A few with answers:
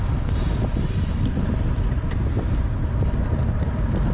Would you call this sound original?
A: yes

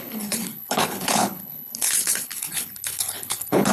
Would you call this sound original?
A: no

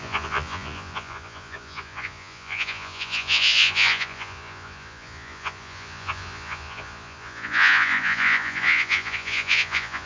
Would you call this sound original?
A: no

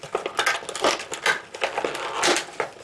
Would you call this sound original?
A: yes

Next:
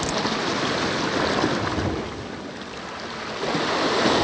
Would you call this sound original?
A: yes